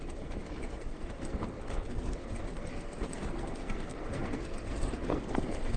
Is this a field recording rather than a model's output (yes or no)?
no